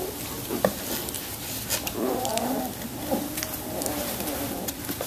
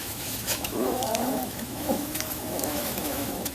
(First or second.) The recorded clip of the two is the first